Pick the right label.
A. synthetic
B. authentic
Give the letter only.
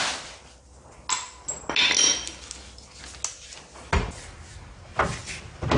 B